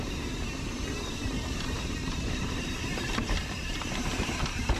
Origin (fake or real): fake